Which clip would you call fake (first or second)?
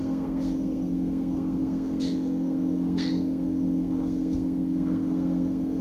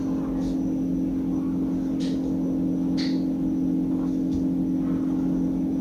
first